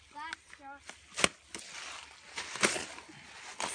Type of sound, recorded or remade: recorded